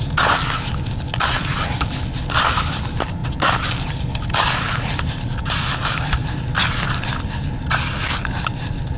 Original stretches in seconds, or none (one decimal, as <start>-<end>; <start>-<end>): 0.0-9.0

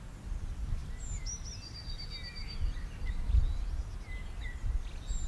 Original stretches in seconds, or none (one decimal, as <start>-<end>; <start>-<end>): 0.0-5.3